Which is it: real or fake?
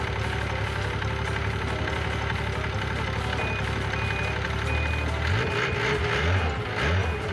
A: real